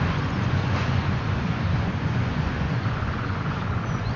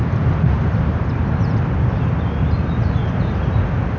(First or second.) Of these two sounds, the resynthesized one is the first